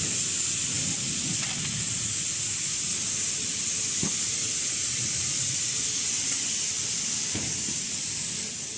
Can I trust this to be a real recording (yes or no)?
yes